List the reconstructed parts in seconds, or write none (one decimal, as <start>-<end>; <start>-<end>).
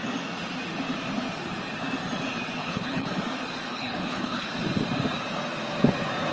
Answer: 2.6-3.1; 3.7-4.5